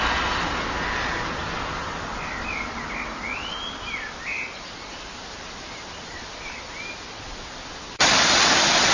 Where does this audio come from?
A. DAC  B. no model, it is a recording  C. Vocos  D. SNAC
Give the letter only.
B